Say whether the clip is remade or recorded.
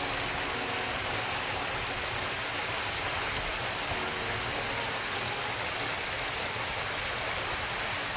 recorded